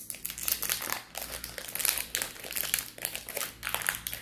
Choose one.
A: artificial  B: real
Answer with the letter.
B